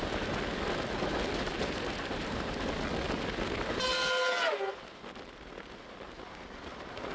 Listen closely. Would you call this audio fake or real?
real